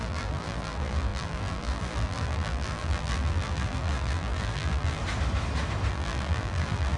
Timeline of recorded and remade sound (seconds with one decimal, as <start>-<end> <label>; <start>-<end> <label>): 0.0-5.0 remade; 5.0-5.9 recorded; 5.9-7.0 remade